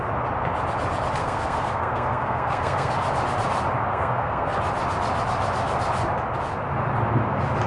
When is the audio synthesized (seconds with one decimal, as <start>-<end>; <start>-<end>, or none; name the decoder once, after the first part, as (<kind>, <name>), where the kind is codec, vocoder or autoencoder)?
1.2-2.9 (codec, SNAC); 3.9-4.6